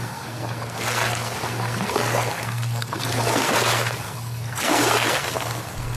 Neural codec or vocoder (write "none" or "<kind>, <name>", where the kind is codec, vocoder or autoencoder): codec, SNAC